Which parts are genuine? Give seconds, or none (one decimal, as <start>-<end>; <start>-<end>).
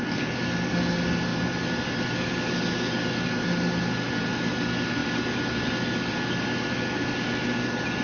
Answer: 0.0-1.3; 2.3-8.0